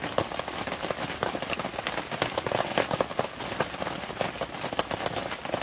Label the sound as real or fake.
real